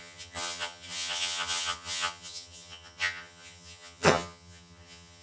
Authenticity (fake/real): fake